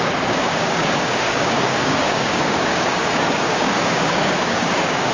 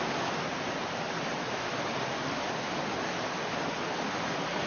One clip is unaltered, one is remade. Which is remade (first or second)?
first